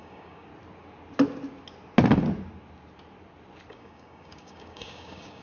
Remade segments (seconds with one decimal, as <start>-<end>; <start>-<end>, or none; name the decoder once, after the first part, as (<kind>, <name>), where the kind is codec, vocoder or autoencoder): 0.0-0.5 (codec, DAC); 3.7-5.4